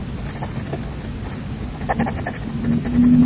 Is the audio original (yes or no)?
yes